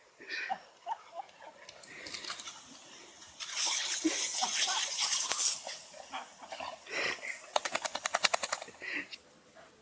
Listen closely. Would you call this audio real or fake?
real